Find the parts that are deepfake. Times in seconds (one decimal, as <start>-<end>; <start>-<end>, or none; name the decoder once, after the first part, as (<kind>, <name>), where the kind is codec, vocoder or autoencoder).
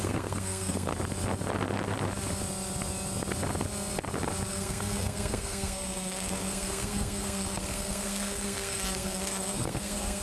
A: 0.0-0.9 (codec, SNAC); 4.5-10.2